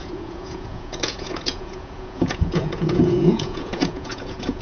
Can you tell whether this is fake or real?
fake